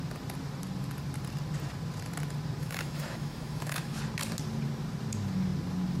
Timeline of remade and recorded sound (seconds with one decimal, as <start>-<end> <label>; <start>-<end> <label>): 0.0-2.6 recorded; 2.6-4.0 remade; 4.0-6.0 recorded